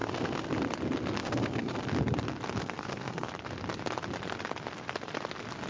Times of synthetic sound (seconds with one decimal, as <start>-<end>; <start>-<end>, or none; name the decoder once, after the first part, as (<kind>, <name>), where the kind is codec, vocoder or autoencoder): 0.0-0.5 (codec, SNAC); 1.2-1.8; 2.6-3.3